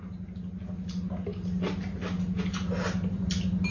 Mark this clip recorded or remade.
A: recorded